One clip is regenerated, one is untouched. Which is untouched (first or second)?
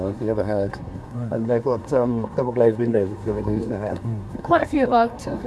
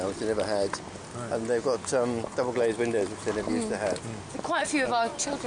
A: second